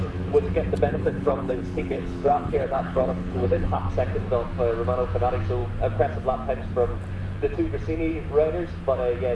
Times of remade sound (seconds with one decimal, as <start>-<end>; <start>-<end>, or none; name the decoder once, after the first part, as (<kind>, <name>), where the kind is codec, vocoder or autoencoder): 0.9-3.9 (codec, HILCodec)